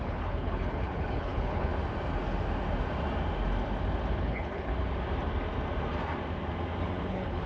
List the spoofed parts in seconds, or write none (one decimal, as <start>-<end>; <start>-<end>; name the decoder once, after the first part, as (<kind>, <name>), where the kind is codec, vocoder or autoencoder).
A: 0.0-1.7 (codec, HILCodec); 4.2-4.7; 7.0-7.5